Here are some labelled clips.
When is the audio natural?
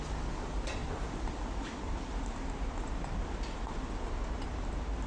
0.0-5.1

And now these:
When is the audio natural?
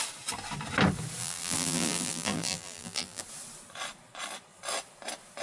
0.0-1.2; 3.2-5.4